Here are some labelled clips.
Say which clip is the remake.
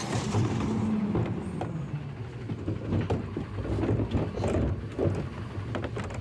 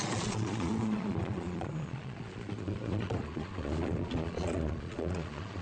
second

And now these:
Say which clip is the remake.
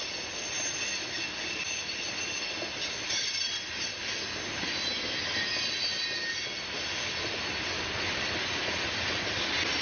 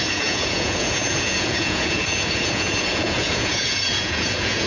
second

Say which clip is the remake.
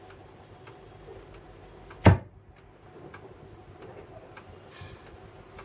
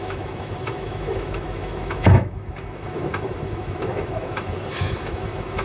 second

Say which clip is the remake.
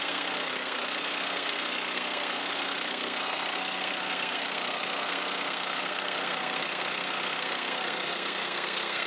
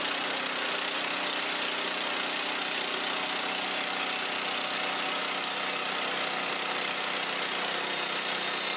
first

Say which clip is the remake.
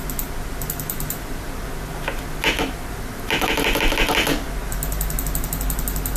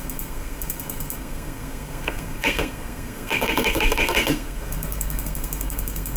second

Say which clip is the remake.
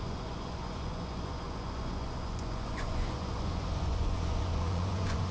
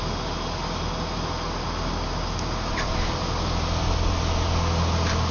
first